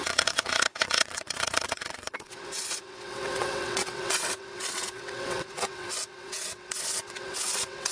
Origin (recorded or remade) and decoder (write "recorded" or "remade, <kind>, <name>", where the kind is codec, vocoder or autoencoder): remade, vocoder, WaveNeXt